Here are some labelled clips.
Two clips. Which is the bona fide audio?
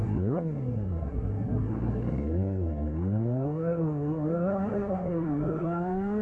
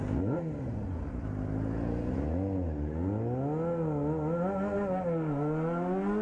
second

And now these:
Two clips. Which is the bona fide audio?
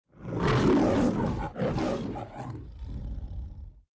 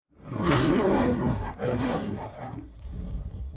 first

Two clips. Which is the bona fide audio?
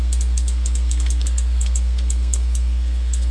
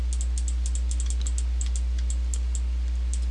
second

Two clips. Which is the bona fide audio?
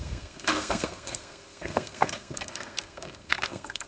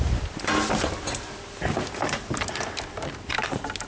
second